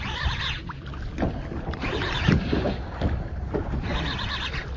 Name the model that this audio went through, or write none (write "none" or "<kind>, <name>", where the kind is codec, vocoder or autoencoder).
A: none